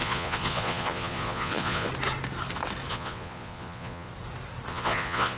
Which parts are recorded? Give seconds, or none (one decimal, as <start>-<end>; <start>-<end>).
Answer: 1.9-2.9; 4.1-4.7